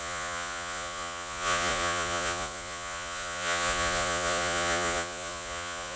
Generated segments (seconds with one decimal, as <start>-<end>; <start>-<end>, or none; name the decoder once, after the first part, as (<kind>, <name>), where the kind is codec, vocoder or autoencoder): 0.0-6.0 (vocoder, Vocos)